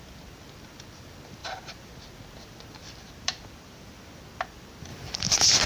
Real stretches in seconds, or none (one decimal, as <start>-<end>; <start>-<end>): 0.0-1.4; 2.1-2.8; 3.9-4.9